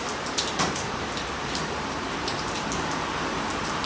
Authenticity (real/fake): fake